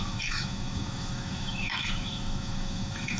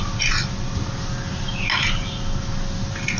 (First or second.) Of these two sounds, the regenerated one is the first